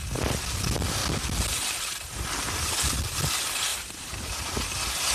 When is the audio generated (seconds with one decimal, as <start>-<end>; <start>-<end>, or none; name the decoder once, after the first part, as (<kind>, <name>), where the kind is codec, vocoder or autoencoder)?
3.7-4.3 (vocoder, BigVGAN v2)